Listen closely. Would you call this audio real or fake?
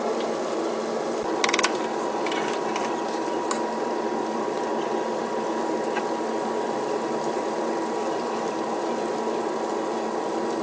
real